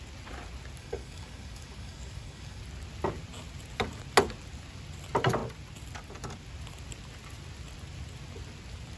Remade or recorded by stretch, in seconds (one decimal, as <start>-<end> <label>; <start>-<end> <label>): 0.0-0.8 recorded; 0.8-2.6 remade; 2.6-9.0 recorded